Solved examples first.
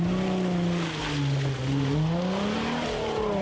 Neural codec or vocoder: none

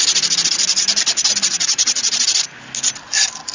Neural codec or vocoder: none